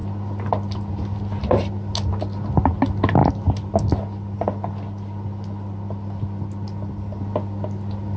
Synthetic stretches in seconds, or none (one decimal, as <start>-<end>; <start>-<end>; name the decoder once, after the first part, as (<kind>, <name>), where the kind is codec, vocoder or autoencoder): none